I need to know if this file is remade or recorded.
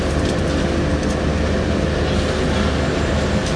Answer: recorded